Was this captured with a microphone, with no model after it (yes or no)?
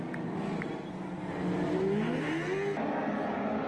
yes